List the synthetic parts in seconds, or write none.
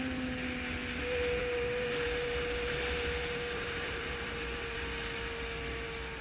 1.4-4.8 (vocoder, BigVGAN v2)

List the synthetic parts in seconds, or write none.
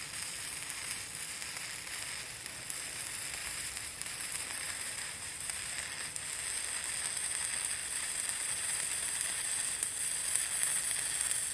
3.4-5.4 (vocoder, BigVGAN v2); 7.8-10.0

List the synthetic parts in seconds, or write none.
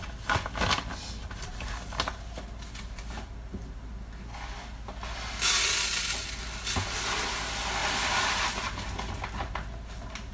none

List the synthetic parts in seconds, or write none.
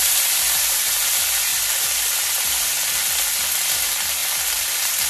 4.2-5.1 (vocoder, BigVGAN v2)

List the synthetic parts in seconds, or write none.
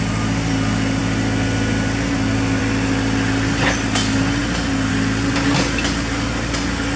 none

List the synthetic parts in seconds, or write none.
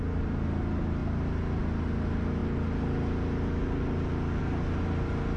none